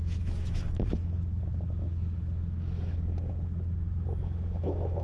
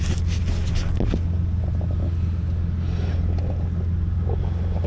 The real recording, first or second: second